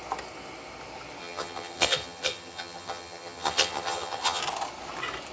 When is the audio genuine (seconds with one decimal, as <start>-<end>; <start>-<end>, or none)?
0.0-1.2; 4.4-5.3